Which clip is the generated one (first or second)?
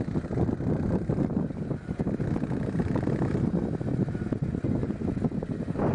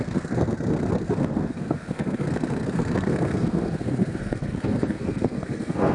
second